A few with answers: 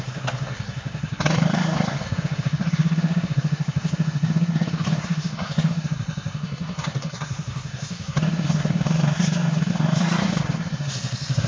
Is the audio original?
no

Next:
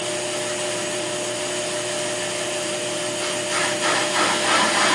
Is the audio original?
yes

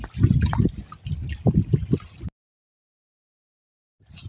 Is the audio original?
yes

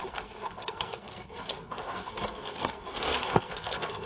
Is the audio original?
no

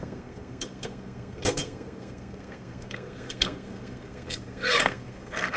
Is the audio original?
no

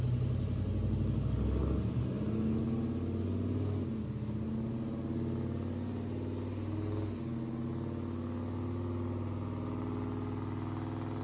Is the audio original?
yes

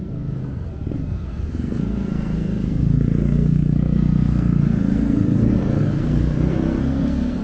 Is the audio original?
no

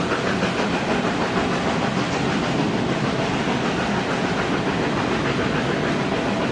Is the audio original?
yes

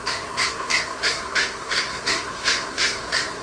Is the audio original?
no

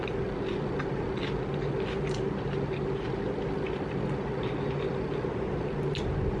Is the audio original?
yes